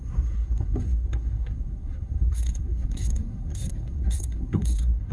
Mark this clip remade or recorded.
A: remade